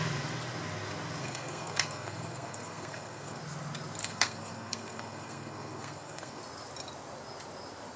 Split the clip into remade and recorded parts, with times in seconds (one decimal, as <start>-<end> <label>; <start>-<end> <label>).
0.0-1.2 recorded; 1.2-3.4 remade; 3.4-4.0 recorded; 4.0-6.4 remade; 6.4-8.0 recorded